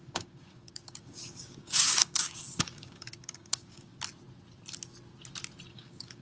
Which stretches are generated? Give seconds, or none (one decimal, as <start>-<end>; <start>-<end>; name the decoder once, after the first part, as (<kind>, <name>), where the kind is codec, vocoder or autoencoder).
0.0-3.9 (codec, DAC); 5.7-6.2